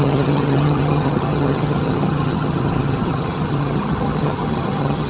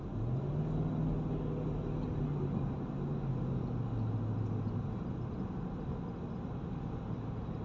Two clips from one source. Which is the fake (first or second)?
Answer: first